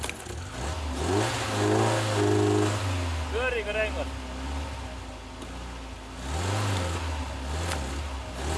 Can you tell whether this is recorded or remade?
recorded